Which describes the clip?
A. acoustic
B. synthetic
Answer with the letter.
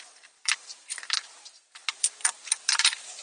B